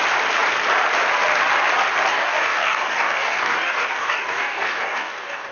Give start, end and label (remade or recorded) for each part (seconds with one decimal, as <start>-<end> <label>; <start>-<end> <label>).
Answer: 0.0-2.1 recorded; 2.1-5.5 remade